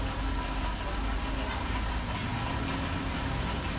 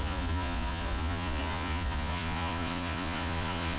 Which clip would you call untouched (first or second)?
first